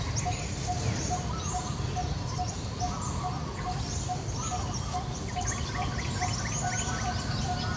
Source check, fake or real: real